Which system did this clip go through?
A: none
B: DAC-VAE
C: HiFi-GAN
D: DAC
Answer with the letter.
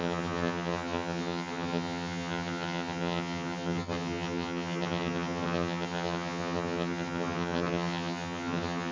C